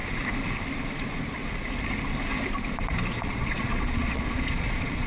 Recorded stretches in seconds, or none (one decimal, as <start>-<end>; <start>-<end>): 0.0-3.1